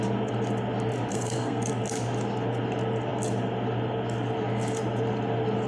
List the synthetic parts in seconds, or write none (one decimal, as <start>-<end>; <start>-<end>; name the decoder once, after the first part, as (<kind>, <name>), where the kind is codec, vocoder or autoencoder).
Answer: 1.1-1.7 (codec, SNAC)